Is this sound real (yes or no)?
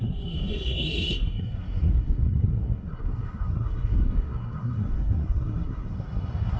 no